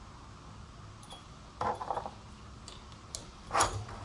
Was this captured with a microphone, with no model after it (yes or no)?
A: yes